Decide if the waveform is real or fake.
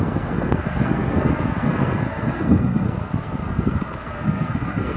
fake